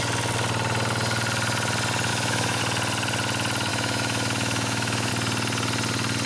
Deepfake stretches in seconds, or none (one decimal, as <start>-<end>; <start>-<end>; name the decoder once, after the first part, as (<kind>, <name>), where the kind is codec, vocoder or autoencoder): 2.1-2.6 (autoencoder, DAC-VAE); 3.7-5.1